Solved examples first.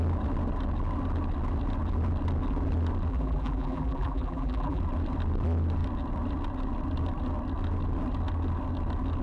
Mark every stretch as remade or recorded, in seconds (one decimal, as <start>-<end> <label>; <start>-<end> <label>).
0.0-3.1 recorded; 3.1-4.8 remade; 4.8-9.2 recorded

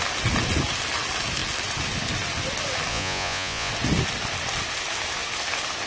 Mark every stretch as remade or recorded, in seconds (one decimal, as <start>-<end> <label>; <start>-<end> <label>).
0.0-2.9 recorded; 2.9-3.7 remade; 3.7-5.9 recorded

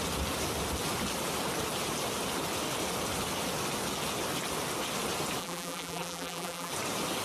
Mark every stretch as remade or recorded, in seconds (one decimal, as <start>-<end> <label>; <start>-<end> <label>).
0.0-5.4 recorded; 5.4-6.7 remade; 6.7-7.2 recorded

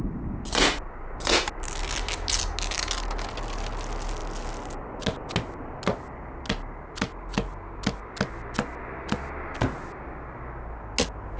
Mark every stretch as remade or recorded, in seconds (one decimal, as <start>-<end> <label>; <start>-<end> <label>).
0.0-11.4 recorded

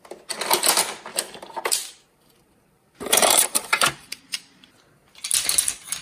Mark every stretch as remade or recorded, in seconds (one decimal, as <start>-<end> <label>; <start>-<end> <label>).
0.0-1.1 recorded; 1.1-4.7 remade; 4.7-6.0 recorded

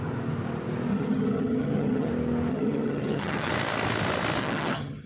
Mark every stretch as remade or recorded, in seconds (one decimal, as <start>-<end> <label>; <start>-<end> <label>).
0.0-0.9 recorded; 0.9-2.1 remade; 2.1-2.5 recorded; 2.5-3.5 remade; 3.5-4.4 recorded; 4.4-5.1 remade